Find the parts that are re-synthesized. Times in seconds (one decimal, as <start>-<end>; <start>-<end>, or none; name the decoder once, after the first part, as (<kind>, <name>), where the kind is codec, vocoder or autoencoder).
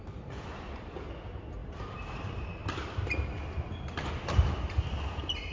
none